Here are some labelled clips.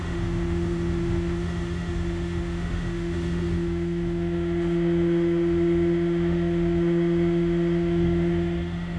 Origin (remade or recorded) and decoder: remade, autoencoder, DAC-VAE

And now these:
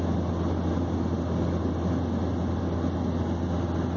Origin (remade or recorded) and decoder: recorded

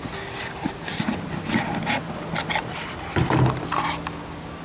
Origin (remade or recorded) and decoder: recorded